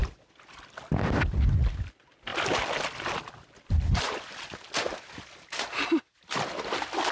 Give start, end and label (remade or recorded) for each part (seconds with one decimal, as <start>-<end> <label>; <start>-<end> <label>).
0.0-0.8 remade; 0.8-2.3 recorded; 2.3-5.4 remade; 5.4-7.1 recorded